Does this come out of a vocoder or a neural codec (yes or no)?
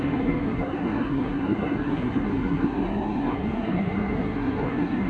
yes